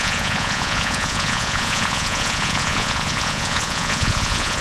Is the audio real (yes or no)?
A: no